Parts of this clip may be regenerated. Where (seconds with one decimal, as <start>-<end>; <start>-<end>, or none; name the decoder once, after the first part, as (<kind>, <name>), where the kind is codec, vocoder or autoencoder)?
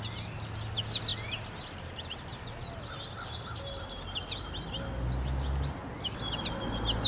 none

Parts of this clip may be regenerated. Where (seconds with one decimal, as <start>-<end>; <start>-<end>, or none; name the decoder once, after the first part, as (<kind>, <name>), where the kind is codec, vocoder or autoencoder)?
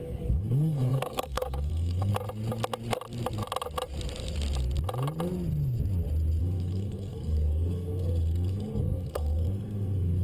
0.0-2.1 (codec, SNAC); 6.4-10.2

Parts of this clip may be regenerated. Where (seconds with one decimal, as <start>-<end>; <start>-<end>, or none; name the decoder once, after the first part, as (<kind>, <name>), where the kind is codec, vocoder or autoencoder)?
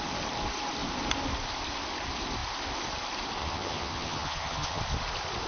3.4-4.8 (vocoder, HiFi-GAN)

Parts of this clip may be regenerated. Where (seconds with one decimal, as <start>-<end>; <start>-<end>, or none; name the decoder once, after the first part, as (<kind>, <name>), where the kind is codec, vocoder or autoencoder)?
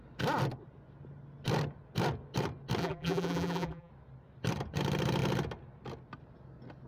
2.8-3.9 (vocoder, BigVGAN v2)